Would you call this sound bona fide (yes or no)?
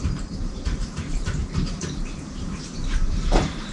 no